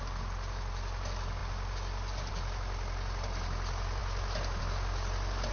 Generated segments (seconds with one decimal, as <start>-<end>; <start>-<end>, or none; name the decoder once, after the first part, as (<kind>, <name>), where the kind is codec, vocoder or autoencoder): none